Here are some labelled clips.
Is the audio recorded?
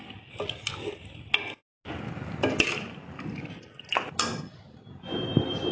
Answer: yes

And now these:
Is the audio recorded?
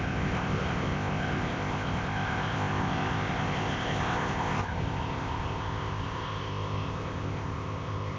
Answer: no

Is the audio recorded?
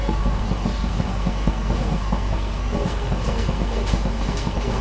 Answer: no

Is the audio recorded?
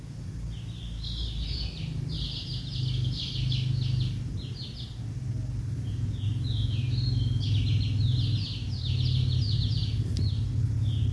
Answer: yes